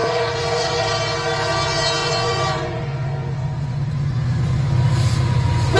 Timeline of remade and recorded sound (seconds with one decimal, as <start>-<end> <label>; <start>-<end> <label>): 0.0-0.8 remade; 0.8-2.0 recorded; 2.0-5.8 remade